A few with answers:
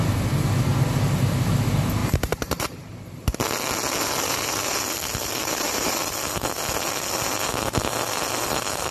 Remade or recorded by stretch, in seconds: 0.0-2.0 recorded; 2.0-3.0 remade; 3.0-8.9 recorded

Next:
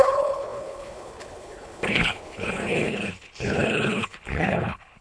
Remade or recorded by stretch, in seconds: 0.0-5.0 remade

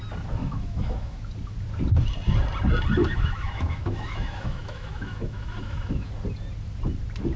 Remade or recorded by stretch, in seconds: 0.0-0.4 recorded; 0.4-1.2 remade; 1.2-3.0 recorded; 3.0-6.1 remade; 6.1-7.4 recorded

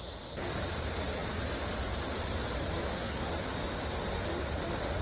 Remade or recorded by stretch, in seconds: 0.0-2.9 recorded; 2.9-3.4 remade; 3.4-5.0 recorded

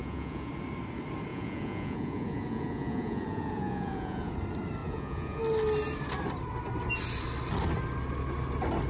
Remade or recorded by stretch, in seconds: 0.0-0.5 remade; 0.5-1.3 recorded; 1.3-4.3 remade; 4.3-4.8 recorded; 4.8-5.4 remade; 5.4-8.9 recorded